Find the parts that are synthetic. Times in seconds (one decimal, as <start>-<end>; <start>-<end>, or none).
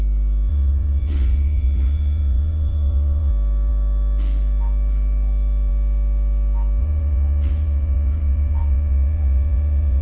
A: 0.5-3.3; 6.8-10.0